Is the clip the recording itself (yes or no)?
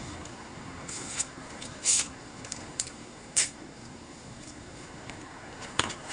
no